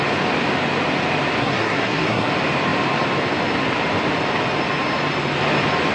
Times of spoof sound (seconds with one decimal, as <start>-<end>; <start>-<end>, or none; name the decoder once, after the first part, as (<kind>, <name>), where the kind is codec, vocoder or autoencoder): 1.4-2.3 (codec, SNAC)